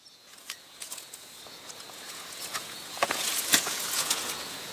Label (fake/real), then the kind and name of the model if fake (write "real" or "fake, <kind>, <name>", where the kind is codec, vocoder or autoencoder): fake, vocoder, Vocos